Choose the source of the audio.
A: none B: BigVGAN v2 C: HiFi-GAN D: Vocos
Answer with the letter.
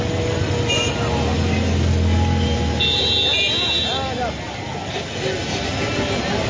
A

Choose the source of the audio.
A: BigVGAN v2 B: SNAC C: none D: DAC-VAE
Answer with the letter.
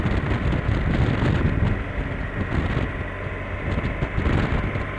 C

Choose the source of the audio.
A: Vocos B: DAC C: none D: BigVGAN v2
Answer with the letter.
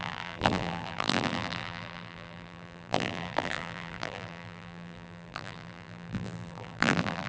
D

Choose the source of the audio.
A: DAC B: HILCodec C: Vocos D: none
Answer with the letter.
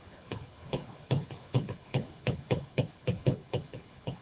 B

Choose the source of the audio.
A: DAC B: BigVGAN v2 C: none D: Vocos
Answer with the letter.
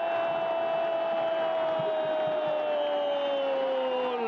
C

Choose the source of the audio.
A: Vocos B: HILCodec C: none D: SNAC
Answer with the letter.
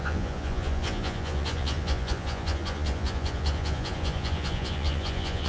A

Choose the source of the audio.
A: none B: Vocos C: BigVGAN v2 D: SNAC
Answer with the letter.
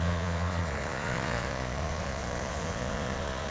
B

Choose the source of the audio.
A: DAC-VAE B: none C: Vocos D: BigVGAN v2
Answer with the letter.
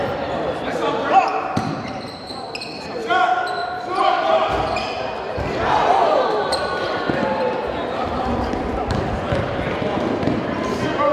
D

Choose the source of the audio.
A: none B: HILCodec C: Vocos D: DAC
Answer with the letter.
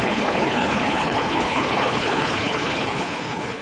B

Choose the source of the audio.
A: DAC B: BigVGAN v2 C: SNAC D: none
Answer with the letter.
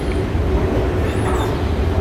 D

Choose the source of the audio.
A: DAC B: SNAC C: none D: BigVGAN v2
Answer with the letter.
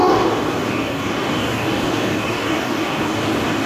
A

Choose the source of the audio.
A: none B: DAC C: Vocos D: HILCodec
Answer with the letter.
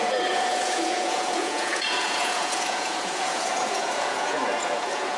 C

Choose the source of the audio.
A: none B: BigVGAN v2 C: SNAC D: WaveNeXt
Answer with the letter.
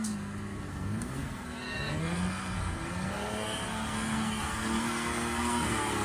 C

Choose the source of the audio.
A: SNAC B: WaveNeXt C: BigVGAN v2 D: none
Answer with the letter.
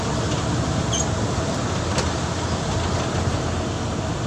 D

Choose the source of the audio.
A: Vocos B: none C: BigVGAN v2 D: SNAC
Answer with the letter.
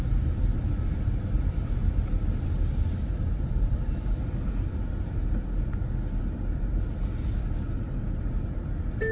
B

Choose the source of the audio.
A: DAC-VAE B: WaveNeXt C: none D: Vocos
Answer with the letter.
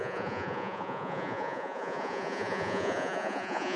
D